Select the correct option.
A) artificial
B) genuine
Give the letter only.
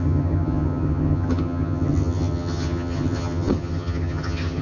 A